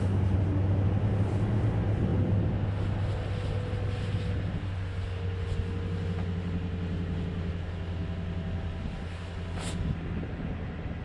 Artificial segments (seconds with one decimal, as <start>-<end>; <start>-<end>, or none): none